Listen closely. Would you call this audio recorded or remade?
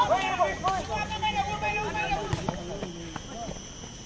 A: recorded